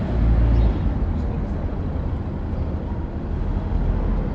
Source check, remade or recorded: recorded